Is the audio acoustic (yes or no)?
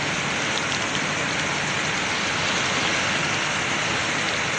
yes